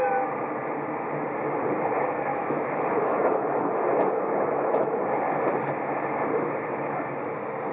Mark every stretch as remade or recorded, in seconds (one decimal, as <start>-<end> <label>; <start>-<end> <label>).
0.0-2.3 recorded; 2.3-5.2 remade; 5.2-7.7 recorded